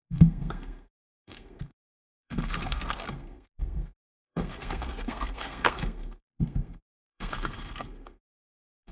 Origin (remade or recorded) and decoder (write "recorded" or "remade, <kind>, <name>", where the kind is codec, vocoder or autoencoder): remade, codec, SNAC